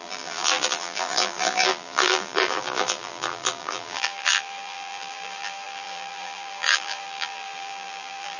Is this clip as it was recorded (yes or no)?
no